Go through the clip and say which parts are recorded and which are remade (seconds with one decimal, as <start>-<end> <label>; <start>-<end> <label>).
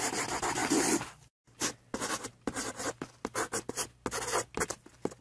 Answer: 0.0-5.2 recorded